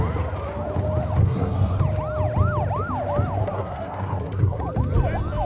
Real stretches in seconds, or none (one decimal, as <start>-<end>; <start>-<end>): 0.0-1.2; 1.8-3.4; 4.6-5.4